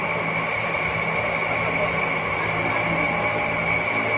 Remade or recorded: recorded